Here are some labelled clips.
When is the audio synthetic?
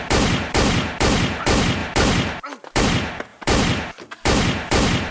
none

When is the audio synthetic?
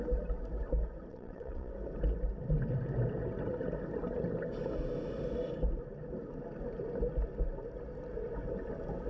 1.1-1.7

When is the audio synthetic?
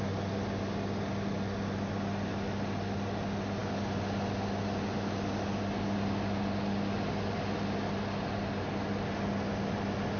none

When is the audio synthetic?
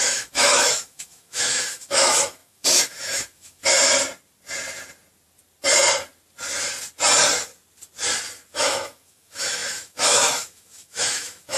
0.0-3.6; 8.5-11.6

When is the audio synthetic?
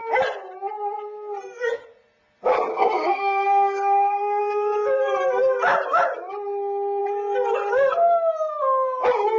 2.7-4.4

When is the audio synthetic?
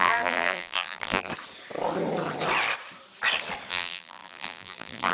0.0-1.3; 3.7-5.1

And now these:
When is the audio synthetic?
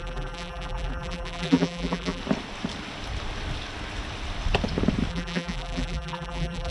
0.0-2.2; 5.1-6.7